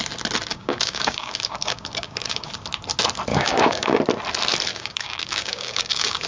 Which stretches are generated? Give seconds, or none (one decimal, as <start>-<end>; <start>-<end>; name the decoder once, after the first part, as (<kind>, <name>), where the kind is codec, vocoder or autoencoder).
0.5-2.5 (codec, DAC); 3.3-4.0; 4.7-6.3